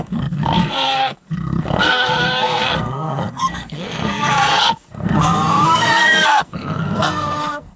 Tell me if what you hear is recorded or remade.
remade